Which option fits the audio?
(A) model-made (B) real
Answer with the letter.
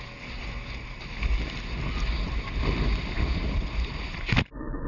B